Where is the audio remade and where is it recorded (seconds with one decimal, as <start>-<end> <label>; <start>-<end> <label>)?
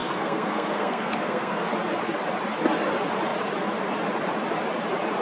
0.0-1.7 remade; 1.7-5.2 recorded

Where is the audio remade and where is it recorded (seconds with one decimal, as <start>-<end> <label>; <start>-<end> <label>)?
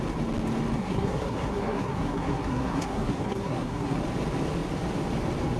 0.0-0.8 recorded; 0.8-4.0 remade; 4.0-5.6 recorded